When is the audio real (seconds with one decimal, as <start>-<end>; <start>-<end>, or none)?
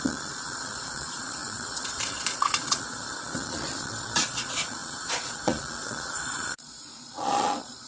none